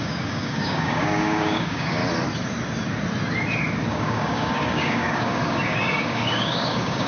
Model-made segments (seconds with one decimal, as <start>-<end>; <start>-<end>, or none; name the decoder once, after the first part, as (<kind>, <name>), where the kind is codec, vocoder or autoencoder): 0.0-2.0 (codec, DAC); 3.9-7.1